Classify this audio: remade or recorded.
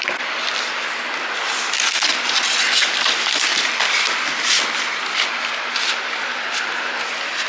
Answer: remade